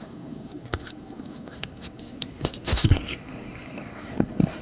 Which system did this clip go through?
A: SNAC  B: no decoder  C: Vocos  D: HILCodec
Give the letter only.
A